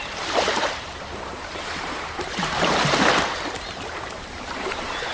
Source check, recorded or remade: remade